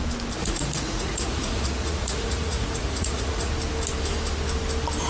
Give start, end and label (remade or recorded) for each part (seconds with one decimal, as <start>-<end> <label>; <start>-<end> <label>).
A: 0.0-0.4 recorded; 0.4-3.5 remade; 3.5-5.1 recorded